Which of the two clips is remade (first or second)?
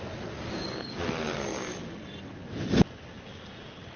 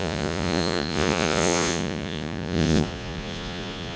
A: second